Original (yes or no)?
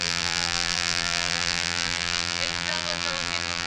no